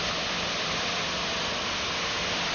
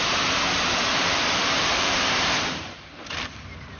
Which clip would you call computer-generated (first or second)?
second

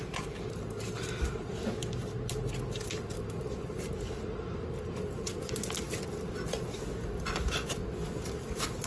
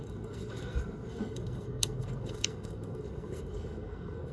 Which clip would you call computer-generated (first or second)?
second